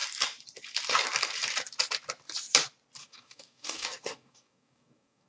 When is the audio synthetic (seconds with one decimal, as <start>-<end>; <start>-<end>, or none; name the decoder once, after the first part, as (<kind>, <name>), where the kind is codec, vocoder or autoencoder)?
3.0-5.3 (codec, DAC)